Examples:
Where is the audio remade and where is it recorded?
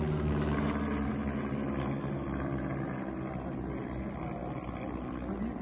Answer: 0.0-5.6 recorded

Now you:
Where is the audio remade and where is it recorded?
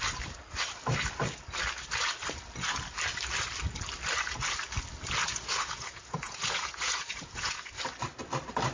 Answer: 0.0-5.2 recorded; 5.2-7.8 remade; 7.8-8.7 recorded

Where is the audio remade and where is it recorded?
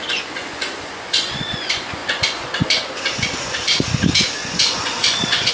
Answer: 0.0-5.5 remade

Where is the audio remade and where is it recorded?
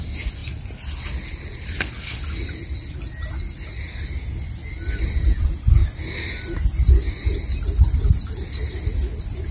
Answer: 0.0-9.5 recorded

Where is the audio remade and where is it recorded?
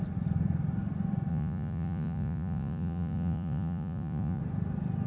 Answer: 0.0-1.3 recorded; 1.3-4.4 remade; 4.4-5.1 recorded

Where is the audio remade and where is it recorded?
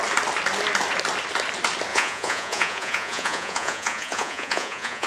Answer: 0.0-1.9 recorded; 1.9-5.1 remade